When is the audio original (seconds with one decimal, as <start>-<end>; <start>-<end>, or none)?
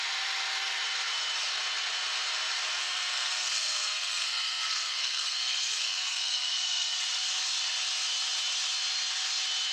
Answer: 0.0-2.8; 7.0-9.7